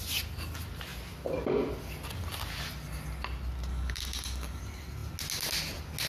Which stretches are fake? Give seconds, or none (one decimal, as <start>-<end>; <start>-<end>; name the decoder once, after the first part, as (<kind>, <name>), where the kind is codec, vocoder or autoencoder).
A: 3.7-4.6 (codec, DAC)